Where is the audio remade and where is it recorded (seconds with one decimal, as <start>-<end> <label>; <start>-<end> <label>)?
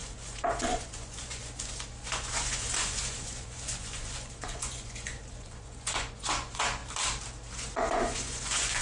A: 0.0-6.8 remade; 6.8-7.5 recorded; 7.5-8.8 remade